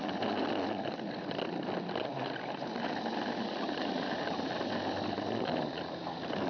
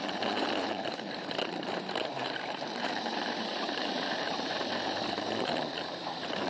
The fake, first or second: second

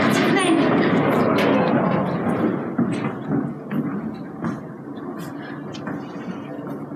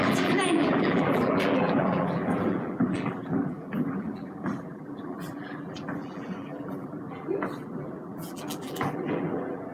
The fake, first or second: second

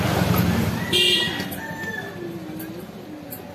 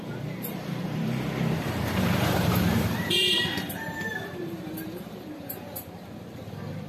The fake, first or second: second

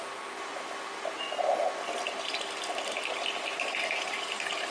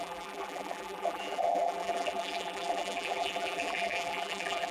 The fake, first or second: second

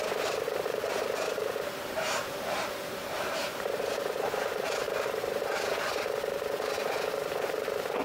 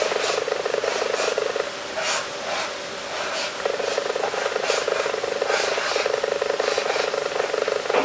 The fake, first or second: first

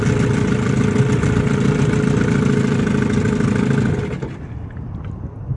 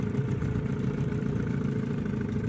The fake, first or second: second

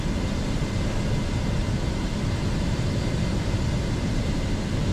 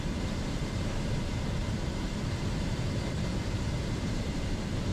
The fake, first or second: second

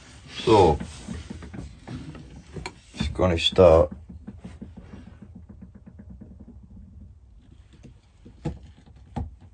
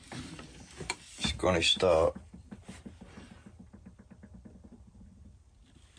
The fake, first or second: second